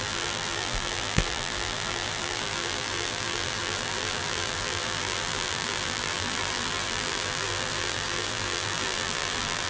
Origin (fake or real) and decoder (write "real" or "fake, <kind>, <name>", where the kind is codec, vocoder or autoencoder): fake, vocoder, BigVGAN v2